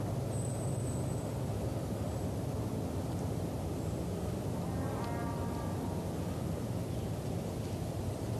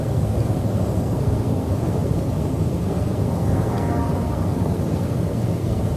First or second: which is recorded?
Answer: first